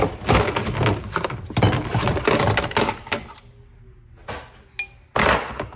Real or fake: real